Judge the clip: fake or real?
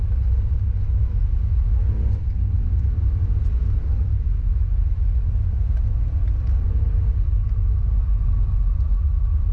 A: real